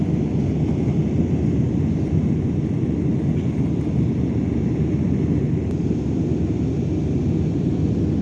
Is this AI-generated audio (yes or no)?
no